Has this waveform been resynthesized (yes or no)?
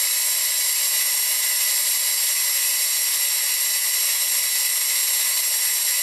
no